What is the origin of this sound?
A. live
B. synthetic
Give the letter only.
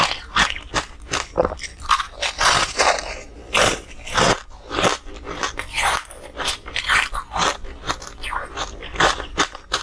A